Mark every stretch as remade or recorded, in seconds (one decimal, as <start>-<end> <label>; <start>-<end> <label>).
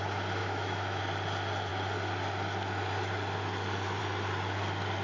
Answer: 0.0-0.4 recorded; 0.4-1.0 remade; 1.0-5.0 recorded